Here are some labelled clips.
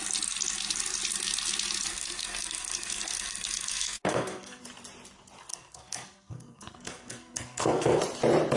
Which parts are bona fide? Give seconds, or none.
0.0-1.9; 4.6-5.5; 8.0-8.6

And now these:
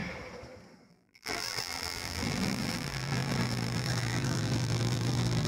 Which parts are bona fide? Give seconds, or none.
0.0-0.9

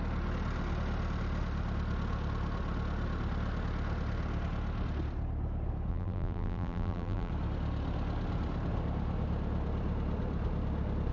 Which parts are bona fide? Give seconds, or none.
0.0-5.9; 7.3-11.1